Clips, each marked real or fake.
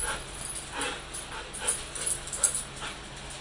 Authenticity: real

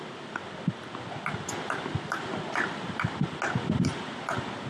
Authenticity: real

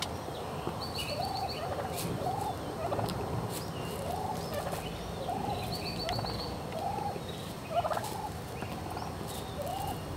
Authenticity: real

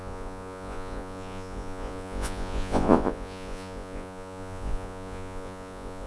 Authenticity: fake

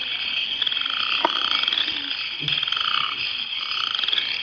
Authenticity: real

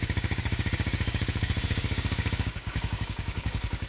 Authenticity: fake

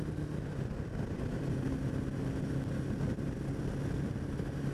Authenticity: real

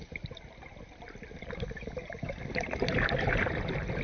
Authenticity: real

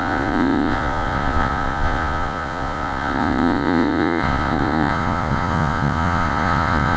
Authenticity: fake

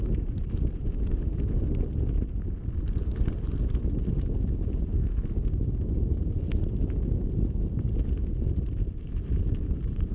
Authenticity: real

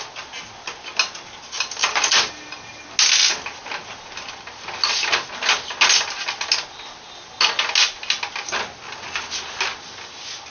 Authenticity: real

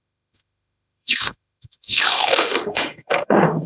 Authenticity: fake